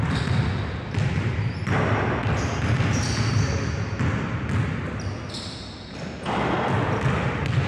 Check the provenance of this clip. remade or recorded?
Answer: recorded